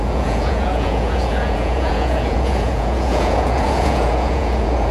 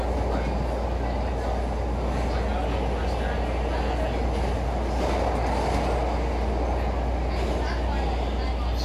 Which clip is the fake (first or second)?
first